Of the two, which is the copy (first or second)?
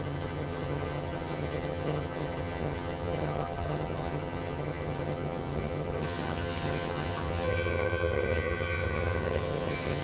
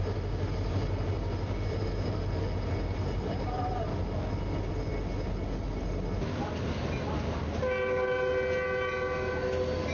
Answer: first